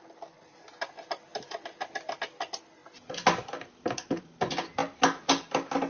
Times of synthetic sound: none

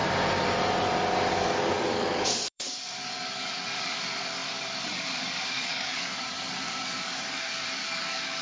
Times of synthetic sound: 1.3-8.4 (codec, DAC)